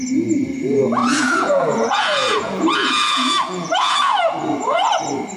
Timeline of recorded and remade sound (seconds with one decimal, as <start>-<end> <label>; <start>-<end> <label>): 0.0-1.0 recorded; 1.0-4.2 remade; 4.2-5.4 recorded